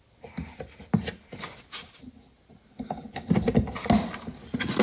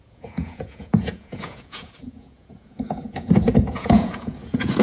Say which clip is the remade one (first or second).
second